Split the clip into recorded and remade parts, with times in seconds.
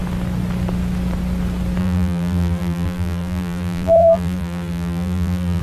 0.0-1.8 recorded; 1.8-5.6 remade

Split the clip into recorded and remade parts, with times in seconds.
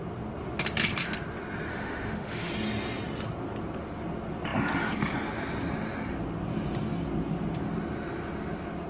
0.0-1.7 recorded; 1.7-2.5 remade; 2.5-8.9 recorded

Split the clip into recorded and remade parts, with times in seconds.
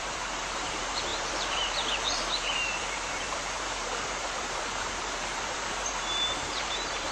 0.0-7.1 remade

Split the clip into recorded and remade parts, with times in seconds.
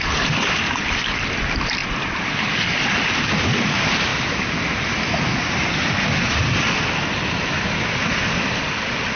0.0-9.2 recorded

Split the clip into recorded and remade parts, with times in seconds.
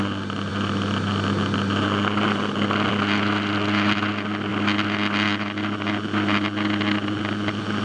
0.0-7.8 recorded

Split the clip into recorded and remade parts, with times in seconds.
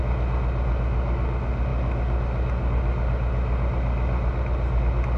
0.0-5.2 recorded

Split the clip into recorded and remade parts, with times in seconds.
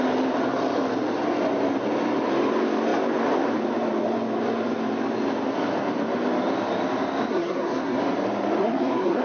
0.0-7.3 recorded; 7.3-8.0 remade; 8.0-8.6 recorded; 8.6-9.2 remade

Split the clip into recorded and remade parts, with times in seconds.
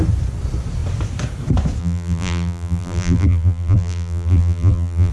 0.0-1.8 recorded; 1.8-5.1 remade